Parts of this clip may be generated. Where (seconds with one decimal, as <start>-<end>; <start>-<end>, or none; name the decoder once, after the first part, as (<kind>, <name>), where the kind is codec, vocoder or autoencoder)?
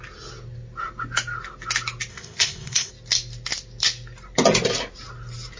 2.1-2.9 (codec, ZipCodec)